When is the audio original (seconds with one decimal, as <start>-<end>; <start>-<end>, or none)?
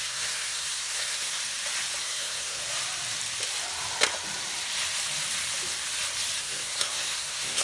1.4-2.0; 2.6-6.4